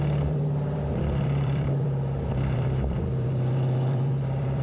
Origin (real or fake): fake